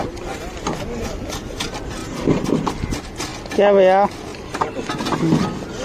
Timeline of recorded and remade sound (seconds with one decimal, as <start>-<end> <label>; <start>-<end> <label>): 0.0-2.0 recorded; 2.0-2.7 remade; 2.7-4.3 recorded; 4.3-4.9 remade; 4.9-5.8 recorded